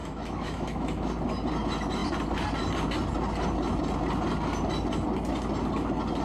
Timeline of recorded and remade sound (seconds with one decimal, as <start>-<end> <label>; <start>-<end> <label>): 0.0-1.1 remade; 1.1-6.2 recorded